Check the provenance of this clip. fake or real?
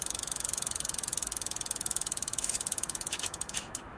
fake